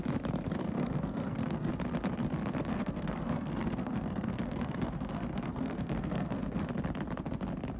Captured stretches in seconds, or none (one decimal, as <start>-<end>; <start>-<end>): 0.0-0.6; 1.7-2.7; 6.7-7.8